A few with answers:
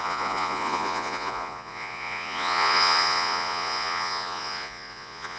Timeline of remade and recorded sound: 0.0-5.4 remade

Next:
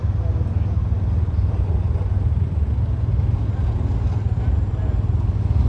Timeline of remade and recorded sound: 0.0-5.7 recorded

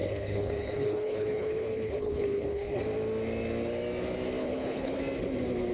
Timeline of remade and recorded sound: 0.0-2.8 remade; 2.8-4.4 recorded; 4.4-5.0 remade; 5.0-5.7 recorded

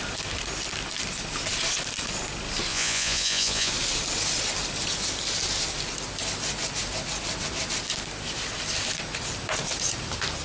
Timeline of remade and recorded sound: 0.0-2.7 recorded; 2.7-3.7 remade; 3.7-10.4 recorded

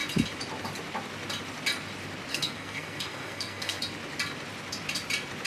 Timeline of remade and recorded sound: 0.0-2.3 recorded; 2.3-3.8 remade; 3.8-5.5 recorded

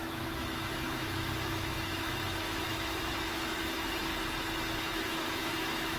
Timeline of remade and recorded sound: 0.0-4.1 remade; 4.1-4.8 recorded; 4.8-6.0 remade

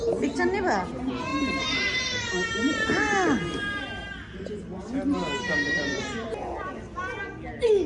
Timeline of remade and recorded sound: 0.0-7.9 recorded

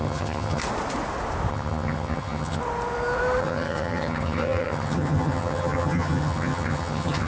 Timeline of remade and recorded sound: 0.0-0.6 remade; 0.6-1.5 recorded; 1.5-2.6 remade; 2.6-3.4 recorded; 3.4-7.3 remade